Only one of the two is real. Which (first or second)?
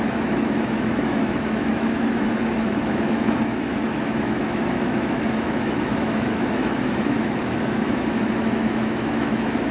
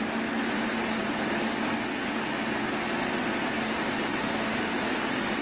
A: second